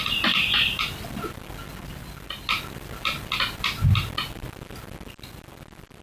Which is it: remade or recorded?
recorded